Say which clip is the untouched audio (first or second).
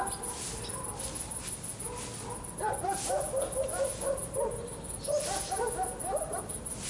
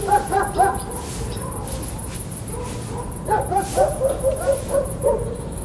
first